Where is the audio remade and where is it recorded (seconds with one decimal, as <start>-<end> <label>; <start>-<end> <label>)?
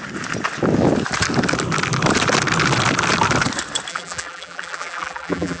0.0-3.9 recorded; 3.9-5.6 remade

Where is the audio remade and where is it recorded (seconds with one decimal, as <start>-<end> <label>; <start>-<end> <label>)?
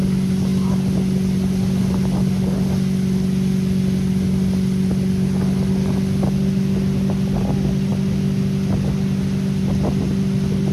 0.0-10.7 recorded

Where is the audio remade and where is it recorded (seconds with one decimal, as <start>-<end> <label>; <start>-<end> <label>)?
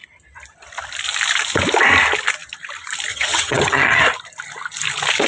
0.0-3.1 recorded; 3.1-4.0 remade; 4.0-5.3 recorded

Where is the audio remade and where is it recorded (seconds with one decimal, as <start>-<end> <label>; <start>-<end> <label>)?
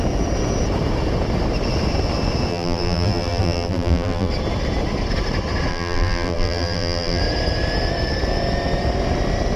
0.0-2.5 recorded; 2.5-4.3 remade; 4.3-5.7 recorded; 5.7-7.2 remade; 7.2-9.6 recorded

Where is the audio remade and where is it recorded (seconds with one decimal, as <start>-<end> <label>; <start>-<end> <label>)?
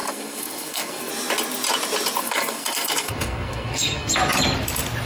0.0-1.1 remade; 1.1-2.2 recorded; 2.2-4.1 remade; 4.1-5.1 recorded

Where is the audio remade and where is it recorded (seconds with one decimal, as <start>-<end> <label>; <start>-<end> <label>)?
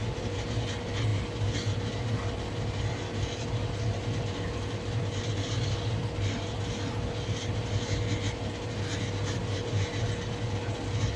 0.0-11.2 recorded